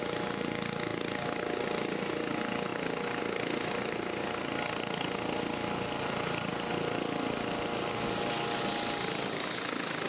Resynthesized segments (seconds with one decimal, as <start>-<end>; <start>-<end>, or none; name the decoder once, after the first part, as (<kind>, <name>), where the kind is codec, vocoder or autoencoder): none